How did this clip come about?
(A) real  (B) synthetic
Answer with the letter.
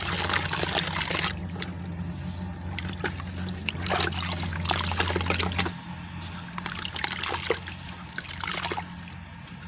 A